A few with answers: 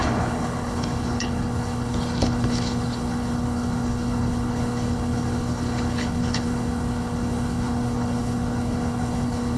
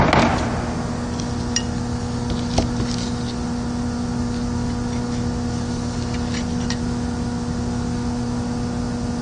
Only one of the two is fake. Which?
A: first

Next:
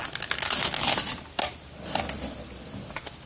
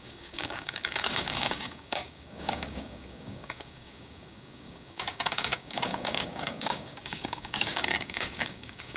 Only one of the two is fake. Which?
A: second